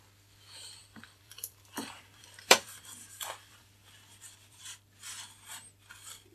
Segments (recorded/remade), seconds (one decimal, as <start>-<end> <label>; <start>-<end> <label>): 0.0-0.8 recorded; 0.8-4.6 remade; 4.6-6.3 recorded